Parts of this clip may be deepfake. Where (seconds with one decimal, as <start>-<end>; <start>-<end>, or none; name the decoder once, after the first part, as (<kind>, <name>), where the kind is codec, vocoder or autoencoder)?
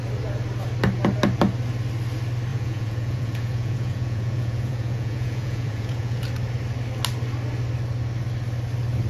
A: 2.5-6.2 (vocoder, Vocos)